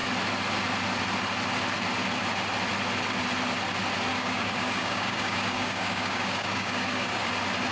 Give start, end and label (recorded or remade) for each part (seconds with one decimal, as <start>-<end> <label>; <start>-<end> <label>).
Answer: 0.0-4.1 recorded; 4.1-7.3 remade; 7.3-7.7 recorded